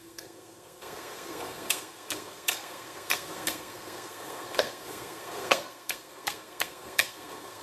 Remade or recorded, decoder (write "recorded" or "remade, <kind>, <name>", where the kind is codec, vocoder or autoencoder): remade, codec, SNAC